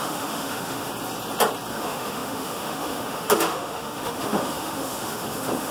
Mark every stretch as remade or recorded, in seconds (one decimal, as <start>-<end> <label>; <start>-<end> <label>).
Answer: 0.0-0.9 remade; 0.9-1.7 recorded; 1.7-5.7 remade